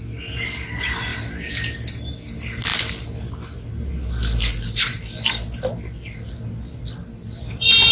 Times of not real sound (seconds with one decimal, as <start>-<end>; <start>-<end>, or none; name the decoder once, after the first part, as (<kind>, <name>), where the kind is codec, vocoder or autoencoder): none